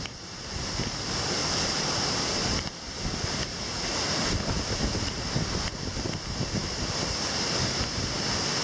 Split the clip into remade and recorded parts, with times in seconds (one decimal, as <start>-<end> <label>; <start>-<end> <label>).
0.0-3.5 recorded; 3.5-4.3 remade; 4.3-8.6 recorded